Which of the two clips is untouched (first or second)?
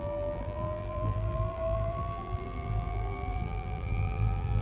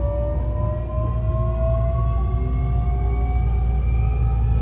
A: second